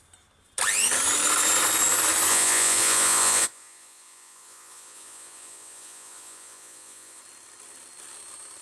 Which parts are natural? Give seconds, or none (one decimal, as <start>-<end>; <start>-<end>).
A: 0.0-2.3; 7.2-8.6